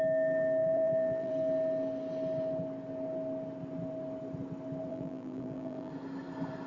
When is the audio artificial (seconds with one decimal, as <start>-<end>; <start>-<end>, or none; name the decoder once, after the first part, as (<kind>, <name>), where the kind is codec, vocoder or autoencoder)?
0.6-1.3 (vocoder, BigVGAN v2); 4.9-5.9